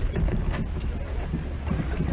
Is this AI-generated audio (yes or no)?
no